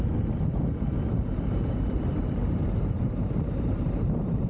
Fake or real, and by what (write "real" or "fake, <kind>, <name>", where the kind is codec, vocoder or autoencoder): fake, vocoder, BigVGAN v2